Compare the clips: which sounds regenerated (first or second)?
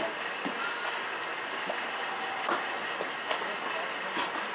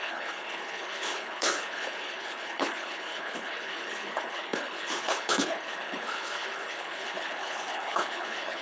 second